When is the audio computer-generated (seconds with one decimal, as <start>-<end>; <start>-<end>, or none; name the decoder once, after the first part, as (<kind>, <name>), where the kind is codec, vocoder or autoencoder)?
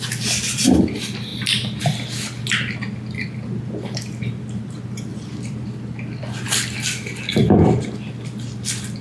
none